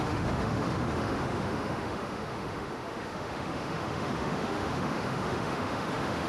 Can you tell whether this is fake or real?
fake